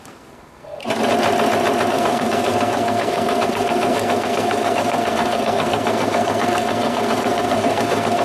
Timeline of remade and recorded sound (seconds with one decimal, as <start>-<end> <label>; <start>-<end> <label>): 0.0-0.8 remade; 0.8-1.9 recorded; 1.9-8.2 remade